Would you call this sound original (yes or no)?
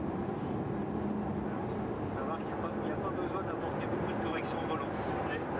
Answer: yes